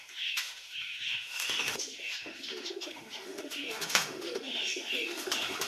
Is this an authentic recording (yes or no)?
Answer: no